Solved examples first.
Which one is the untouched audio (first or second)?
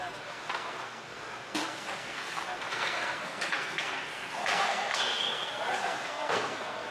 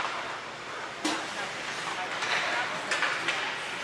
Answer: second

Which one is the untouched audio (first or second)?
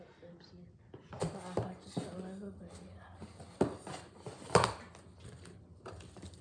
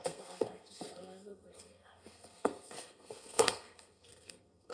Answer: first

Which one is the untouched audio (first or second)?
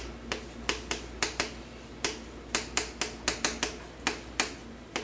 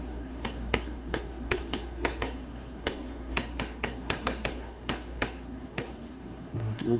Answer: first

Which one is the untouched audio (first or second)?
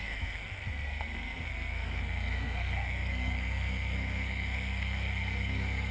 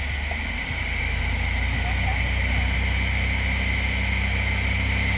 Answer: second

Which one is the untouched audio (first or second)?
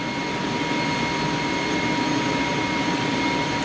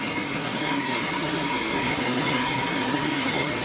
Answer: first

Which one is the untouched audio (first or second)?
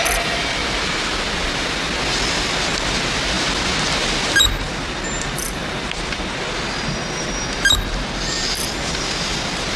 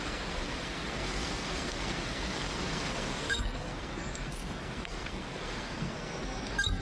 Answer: first